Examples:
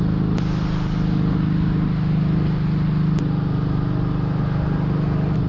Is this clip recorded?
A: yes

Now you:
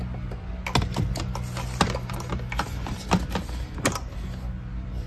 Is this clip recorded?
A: yes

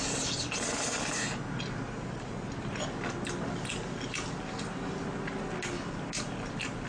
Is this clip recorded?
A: yes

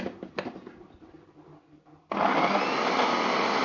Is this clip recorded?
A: yes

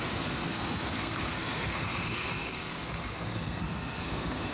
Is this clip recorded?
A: no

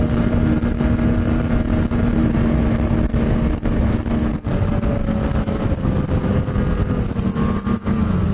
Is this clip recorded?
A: yes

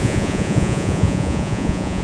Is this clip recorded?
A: no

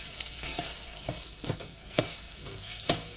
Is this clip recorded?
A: no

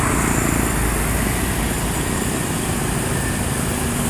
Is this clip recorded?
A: yes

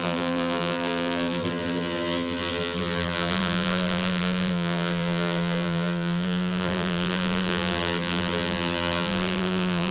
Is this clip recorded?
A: no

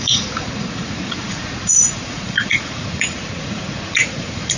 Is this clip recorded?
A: no